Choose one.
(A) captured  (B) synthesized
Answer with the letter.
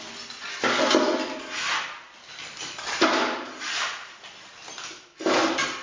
A